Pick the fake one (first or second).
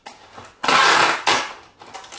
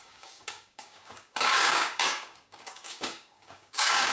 second